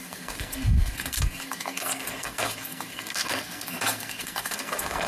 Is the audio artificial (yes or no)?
yes